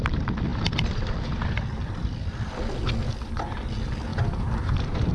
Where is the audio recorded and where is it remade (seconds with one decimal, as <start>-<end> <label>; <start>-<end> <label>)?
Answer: 0.0-5.1 recorded